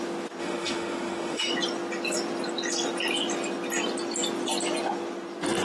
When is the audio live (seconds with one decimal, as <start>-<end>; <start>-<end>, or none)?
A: 0.0-0.4; 1.4-5.6